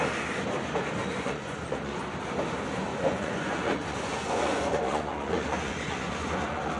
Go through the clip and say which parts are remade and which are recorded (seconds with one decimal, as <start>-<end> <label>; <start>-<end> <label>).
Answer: 0.0-1.0 recorded; 1.0-2.0 remade; 2.0-2.9 recorded; 2.9-6.8 remade